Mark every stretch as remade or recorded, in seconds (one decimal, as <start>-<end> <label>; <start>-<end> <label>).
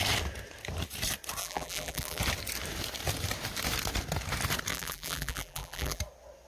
0.0-1.4 recorded; 1.4-2.2 remade; 2.2-4.7 recorded; 4.7-6.0 remade; 6.0-6.5 recorded